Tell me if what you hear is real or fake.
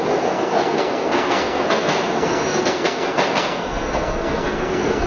fake